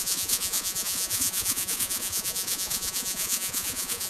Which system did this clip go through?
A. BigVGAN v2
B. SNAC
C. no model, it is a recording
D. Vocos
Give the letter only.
D